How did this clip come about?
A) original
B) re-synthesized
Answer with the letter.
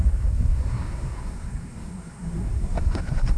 B